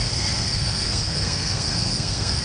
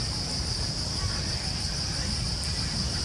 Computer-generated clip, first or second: first